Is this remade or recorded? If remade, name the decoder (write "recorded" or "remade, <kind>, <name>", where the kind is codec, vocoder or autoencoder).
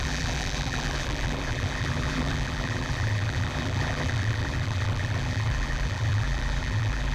remade, vocoder, BigVGAN v2